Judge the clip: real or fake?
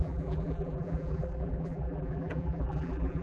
fake